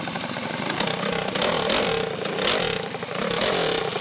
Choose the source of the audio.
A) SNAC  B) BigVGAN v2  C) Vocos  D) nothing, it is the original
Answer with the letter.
B